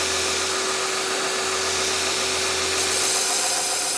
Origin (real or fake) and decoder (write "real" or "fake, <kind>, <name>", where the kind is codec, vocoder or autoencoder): real